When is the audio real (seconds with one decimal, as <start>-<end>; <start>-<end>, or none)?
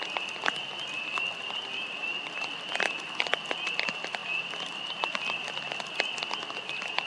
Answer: 0.0-7.1